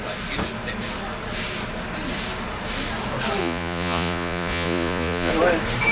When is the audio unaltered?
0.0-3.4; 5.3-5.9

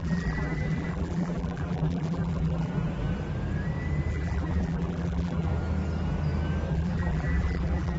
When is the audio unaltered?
2.7-4.1; 5.5-6.7